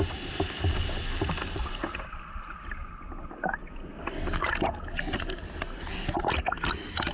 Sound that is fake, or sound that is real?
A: real